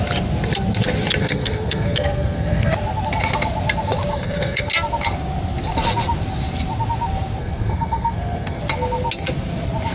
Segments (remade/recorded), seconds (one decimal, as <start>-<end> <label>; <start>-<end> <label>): 0.0-1.2 recorded; 1.2-2.7 remade; 2.7-4.1 recorded; 4.1-4.7 remade; 4.7-7.4 recorded; 7.4-8.6 remade; 8.6-9.9 recorded